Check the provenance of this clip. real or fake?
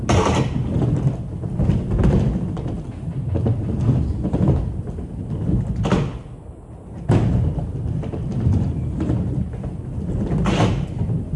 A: real